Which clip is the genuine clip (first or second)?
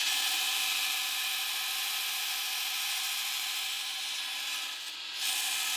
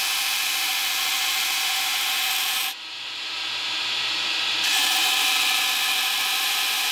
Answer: first